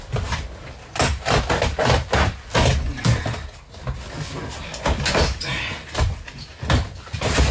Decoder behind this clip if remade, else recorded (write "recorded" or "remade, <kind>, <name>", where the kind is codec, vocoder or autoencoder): recorded